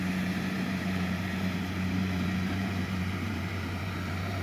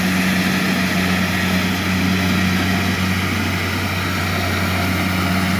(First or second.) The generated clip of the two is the first